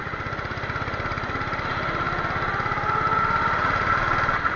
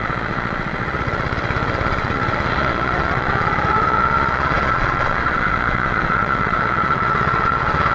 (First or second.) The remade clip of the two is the second